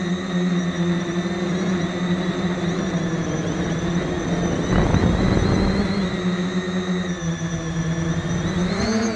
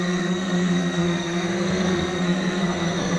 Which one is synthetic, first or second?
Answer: second